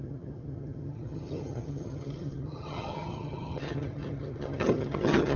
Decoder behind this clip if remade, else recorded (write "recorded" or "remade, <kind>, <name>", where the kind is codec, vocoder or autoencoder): remade, vocoder, HiFi-GAN